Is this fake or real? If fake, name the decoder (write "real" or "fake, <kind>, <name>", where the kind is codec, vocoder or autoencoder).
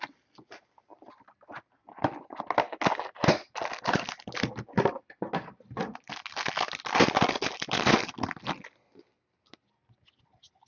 real